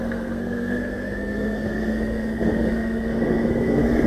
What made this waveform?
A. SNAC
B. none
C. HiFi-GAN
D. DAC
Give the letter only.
A